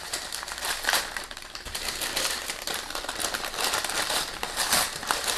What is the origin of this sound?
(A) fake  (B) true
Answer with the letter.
A